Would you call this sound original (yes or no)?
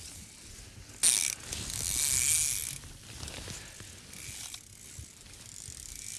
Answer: yes